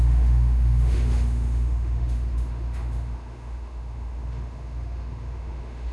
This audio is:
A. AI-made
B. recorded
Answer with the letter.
A